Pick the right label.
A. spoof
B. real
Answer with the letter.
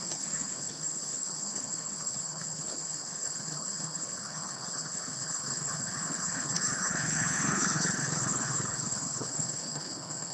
A